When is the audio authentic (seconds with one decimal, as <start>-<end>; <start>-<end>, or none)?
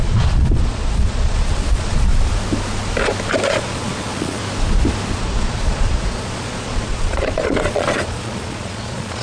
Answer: 2.1-3.5; 4.4-5.1